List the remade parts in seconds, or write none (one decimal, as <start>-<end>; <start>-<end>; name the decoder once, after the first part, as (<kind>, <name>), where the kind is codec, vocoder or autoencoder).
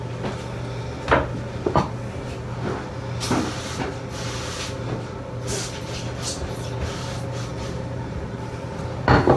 7.5-8.5 (vocoder, BigVGAN v2)